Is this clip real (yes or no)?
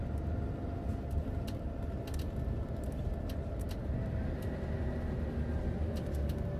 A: yes